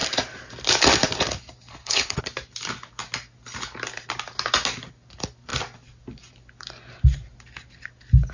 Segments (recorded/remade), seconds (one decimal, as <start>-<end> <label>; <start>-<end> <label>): 0.0-1.7 recorded; 1.7-2.2 remade; 2.2-8.3 recorded